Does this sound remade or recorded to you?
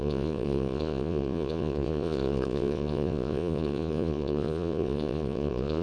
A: remade